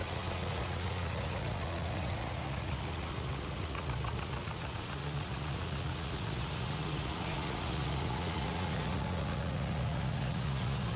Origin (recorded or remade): remade